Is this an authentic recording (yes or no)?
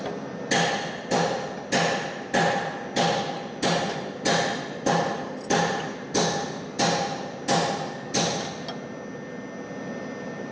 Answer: yes